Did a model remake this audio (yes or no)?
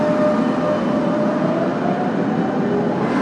no